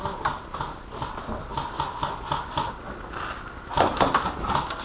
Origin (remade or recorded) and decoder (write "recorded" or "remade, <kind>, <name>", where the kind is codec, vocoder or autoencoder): recorded